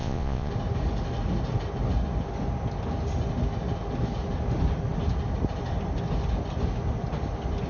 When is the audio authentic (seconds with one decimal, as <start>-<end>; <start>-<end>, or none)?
0.5-7.7